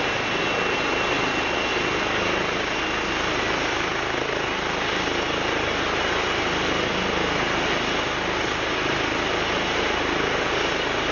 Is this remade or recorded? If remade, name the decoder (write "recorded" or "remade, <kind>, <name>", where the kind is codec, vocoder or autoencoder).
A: recorded